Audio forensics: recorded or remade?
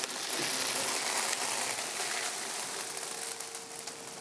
recorded